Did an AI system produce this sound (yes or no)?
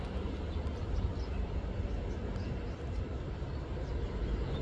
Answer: yes